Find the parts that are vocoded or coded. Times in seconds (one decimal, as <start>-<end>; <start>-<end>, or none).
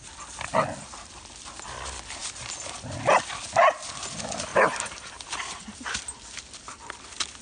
4.5-5.8